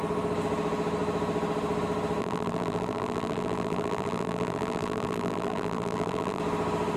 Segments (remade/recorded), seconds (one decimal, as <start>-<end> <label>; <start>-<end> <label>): 0.0-2.2 recorded; 2.2-6.4 remade; 6.4-7.0 recorded